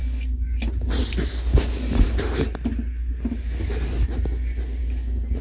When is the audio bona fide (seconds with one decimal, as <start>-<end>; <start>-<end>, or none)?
0.0-5.4